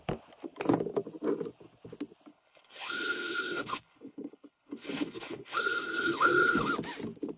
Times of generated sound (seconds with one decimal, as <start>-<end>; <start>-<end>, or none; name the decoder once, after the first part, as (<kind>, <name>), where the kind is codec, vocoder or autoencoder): 2.3-6.7 (codec, HILCodec)